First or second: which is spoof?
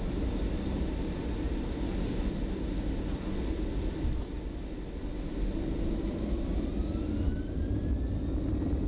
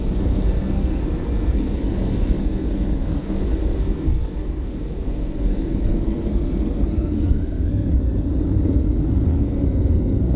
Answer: second